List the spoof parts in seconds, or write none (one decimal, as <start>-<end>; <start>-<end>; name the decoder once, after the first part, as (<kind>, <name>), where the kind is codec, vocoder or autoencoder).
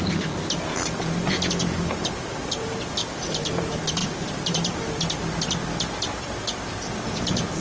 3.0-3.5 (vocoder, BigVGAN v2); 4.0-5.0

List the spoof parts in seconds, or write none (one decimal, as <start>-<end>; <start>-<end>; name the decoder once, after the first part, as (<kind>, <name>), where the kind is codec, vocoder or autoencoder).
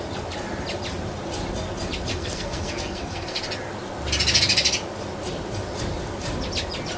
2.1-3.4 (codec, SNAC)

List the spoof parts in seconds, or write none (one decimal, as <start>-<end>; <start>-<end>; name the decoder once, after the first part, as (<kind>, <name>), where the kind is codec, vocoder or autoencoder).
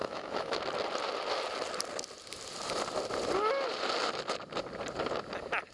0.0-0.6 (autoencoder, DAC-VAE)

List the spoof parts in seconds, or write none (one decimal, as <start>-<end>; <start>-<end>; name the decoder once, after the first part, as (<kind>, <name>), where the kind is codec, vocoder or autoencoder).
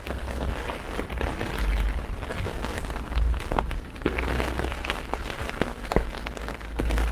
0.0-0.6 (codec, SNAC); 2.4-7.1